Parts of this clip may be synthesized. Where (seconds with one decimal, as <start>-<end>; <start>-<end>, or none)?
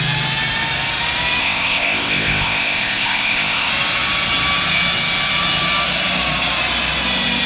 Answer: 1.4-3.7